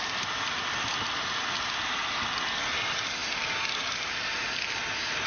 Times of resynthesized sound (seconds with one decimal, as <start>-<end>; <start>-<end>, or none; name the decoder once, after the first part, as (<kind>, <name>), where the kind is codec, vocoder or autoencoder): none